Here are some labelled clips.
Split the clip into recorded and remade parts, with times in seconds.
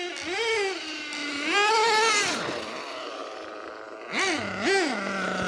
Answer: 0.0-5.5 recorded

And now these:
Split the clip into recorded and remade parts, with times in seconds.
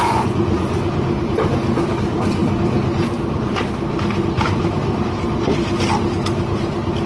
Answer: 0.0-0.8 remade; 0.8-7.1 recorded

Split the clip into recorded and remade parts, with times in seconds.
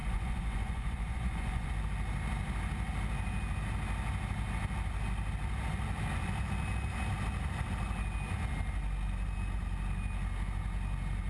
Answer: 0.0-1.7 remade; 1.7-11.3 recorded